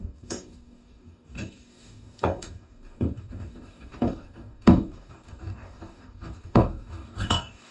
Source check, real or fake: fake